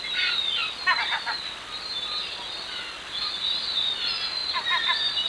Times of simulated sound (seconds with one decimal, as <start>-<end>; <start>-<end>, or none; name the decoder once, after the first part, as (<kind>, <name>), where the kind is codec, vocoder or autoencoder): none